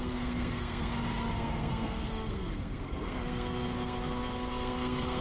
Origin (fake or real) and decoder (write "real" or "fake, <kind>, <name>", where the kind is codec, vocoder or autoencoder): fake, codec, SNAC